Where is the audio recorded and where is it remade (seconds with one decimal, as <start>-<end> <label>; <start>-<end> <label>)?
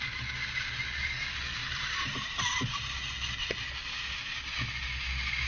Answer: 0.0-1.6 recorded; 1.6-3.0 remade; 3.0-3.8 recorded; 3.8-4.5 remade; 4.5-5.5 recorded